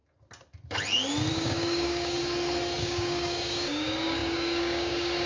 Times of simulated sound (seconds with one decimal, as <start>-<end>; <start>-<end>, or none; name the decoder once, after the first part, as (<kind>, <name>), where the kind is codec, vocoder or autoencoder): 1.3-2.2 (codec, DAC); 2.8-5.3